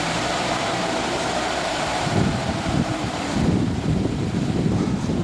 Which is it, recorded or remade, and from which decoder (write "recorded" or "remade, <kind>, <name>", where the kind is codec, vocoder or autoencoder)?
remade, vocoder, BigVGAN v2